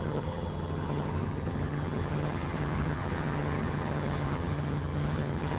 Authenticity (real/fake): fake